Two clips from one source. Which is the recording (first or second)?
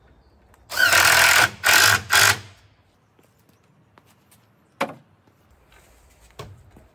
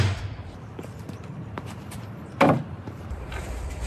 first